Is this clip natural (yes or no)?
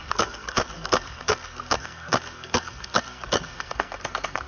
no